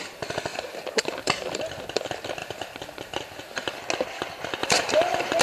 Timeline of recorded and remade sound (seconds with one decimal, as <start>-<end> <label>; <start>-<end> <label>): 0.0-0.5 recorded; 0.5-1.6 remade; 1.6-2.4 recorded; 2.4-3.8 remade; 3.8-4.6 recorded; 4.6-5.4 remade